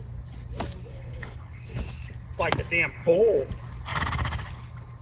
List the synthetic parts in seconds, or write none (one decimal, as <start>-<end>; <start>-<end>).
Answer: 0.9-1.8; 2.9-3.5